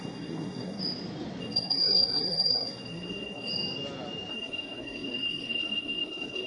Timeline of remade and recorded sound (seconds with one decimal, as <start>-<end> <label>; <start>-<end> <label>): 0.0-0.8 remade; 0.8-1.4 recorded; 1.4-3.5 remade; 3.5-4.3 recorded; 4.3-6.5 remade